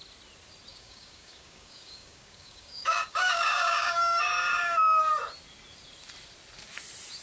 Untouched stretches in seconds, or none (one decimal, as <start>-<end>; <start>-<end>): 0.0-0.7; 5.0-7.2